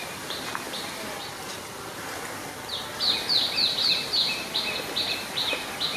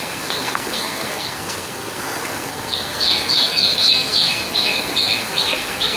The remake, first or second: second